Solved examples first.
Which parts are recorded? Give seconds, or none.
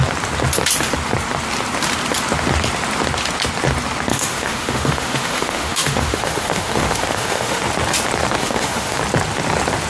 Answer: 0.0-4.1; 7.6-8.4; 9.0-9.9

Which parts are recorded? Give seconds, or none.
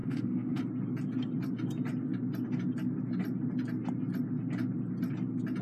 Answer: 0.6-5.6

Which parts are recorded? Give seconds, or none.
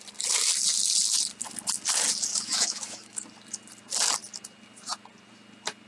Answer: 0.0-2.3; 3.2-5.9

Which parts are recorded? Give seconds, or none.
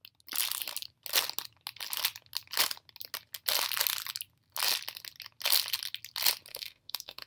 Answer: 0.0-6.5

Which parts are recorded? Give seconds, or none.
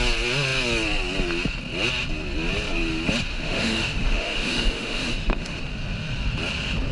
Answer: 0.0-3.3; 5.6-6.9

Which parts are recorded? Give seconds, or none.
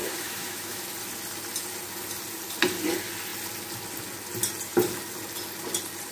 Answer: 0.8-6.1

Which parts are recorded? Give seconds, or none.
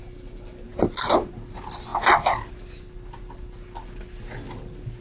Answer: 0.0-5.0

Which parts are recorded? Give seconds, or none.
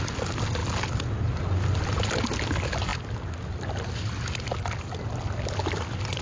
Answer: 0.0-6.2